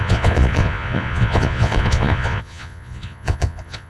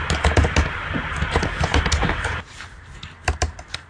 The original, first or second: second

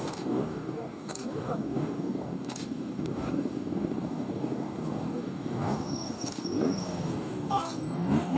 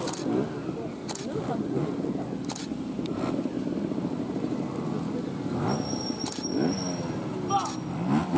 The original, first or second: second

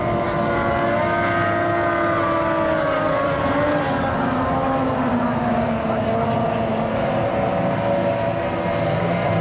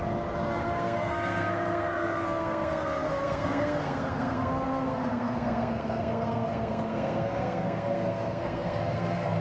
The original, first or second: first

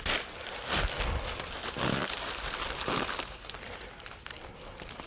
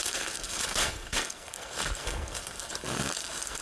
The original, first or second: first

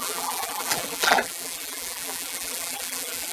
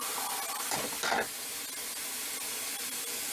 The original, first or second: second